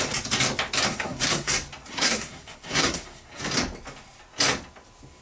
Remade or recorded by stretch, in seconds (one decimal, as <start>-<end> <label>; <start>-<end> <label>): 0.0-0.9 recorded; 0.9-1.5 remade; 1.5-1.9 recorded; 1.9-3.4 remade; 3.4-5.2 recorded